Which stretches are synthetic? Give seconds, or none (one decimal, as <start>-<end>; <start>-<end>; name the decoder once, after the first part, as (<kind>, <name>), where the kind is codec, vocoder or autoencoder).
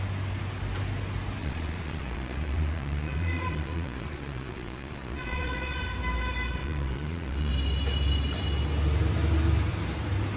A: 1.4-5.8 (vocoder, Vocos); 6.6-7.5